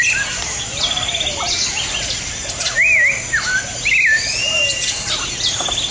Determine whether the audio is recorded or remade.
recorded